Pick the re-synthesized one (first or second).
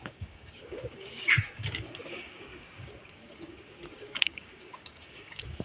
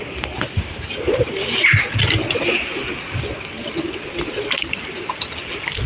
first